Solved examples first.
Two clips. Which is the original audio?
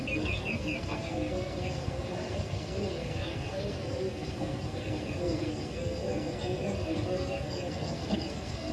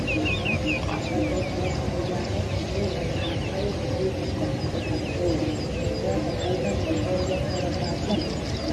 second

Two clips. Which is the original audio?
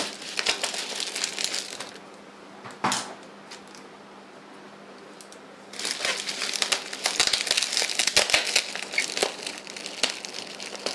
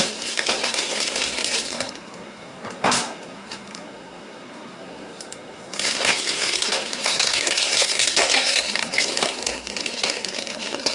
first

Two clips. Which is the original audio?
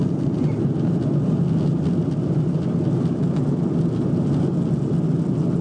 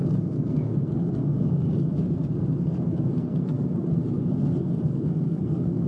first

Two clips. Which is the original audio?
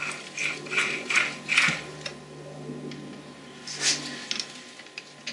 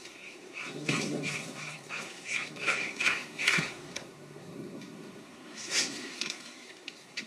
first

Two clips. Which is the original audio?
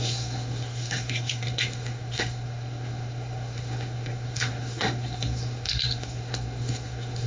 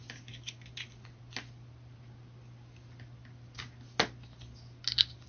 second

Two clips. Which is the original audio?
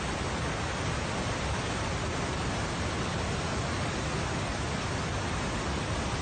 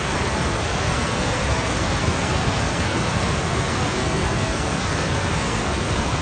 first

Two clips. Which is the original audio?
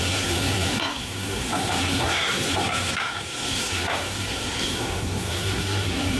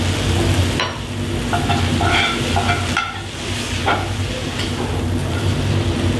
second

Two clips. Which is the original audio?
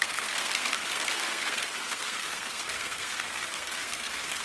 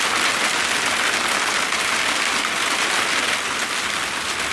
second